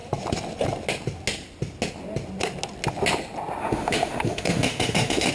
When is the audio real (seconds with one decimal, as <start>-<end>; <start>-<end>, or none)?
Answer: 0.0-3.6